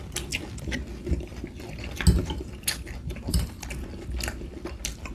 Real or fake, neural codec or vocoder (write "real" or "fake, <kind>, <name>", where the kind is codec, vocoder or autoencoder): real